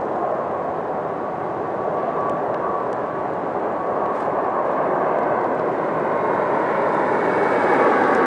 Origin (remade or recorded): recorded